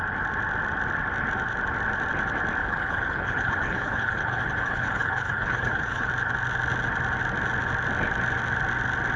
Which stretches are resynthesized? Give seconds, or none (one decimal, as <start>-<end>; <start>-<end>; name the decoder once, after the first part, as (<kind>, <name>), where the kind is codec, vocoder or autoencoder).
2.6-6.1 (codec, HILCodec)